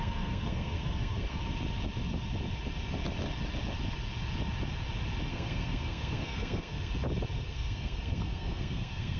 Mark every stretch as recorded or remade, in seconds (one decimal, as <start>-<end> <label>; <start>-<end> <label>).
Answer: 0.0-1.4 remade; 1.4-5.3 recorded; 5.3-6.9 remade; 6.9-7.5 recorded; 7.5-9.2 remade